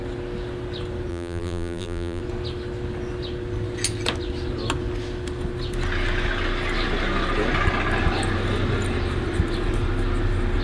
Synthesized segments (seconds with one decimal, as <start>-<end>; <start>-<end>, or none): 1.1-2.2